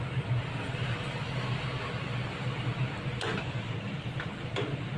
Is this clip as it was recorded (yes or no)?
yes